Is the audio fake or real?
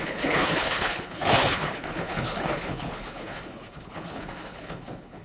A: fake